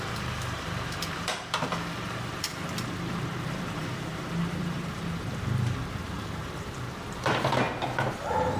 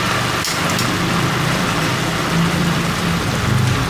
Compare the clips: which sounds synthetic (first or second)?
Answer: first